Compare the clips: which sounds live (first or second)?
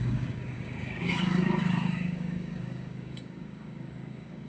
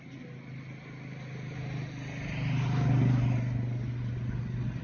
second